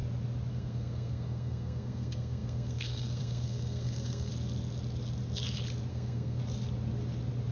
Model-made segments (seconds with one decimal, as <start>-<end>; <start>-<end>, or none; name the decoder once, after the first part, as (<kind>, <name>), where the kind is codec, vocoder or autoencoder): 0.5-4.3 (codec, SNAC); 5.9-6.4